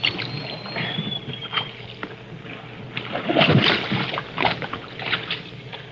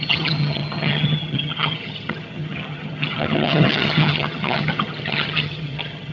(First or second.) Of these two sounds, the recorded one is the first